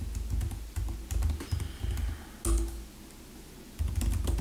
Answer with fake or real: real